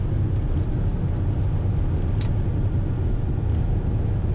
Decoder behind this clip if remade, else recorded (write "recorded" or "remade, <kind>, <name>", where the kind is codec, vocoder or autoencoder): recorded